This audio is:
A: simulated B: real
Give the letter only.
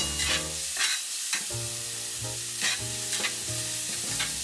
B